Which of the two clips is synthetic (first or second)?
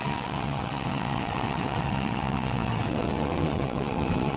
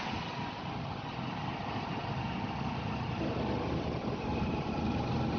first